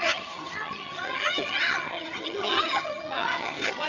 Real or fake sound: fake